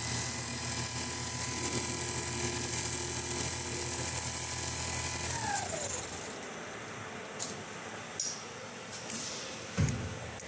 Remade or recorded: recorded